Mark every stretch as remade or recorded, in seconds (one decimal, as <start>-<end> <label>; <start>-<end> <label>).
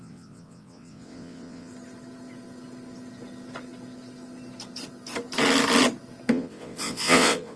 0.0-1.7 remade; 1.7-6.3 recorded; 6.3-7.6 remade